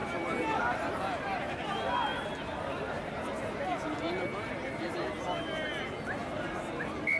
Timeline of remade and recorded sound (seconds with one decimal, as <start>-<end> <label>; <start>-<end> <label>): 0.0-6.2 recorded; 6.2-7.2 remade